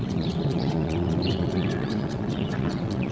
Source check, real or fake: fake